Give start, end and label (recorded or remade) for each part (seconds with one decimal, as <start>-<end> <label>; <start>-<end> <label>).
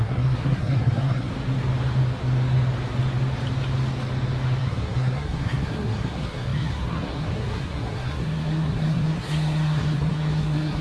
0.0-1.3 remade; 1.3-4.6 recorded; 4.6-10.8 remade